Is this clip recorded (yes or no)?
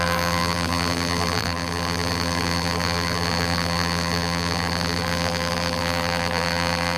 no